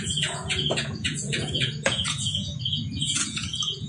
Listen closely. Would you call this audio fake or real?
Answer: fake